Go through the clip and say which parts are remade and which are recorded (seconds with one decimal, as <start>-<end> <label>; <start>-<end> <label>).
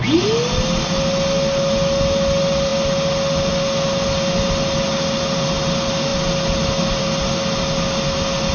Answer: 0.0-8.5 recorded